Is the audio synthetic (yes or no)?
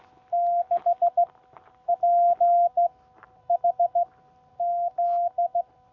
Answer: no